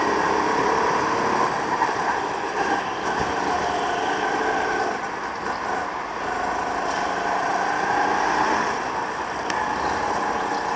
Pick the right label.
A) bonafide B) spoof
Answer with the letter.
A